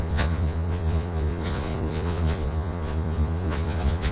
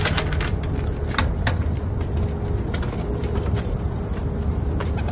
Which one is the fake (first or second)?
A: first